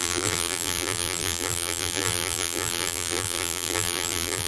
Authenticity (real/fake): fake